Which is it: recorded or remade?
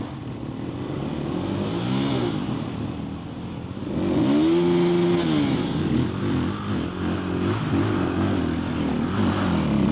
recorded